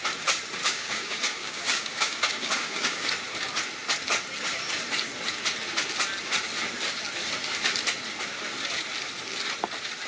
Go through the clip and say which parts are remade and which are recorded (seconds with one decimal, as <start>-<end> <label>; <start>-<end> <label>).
0.0-0.6 recorded; 0.6-3.1 remade; 3.1-10.1 recorded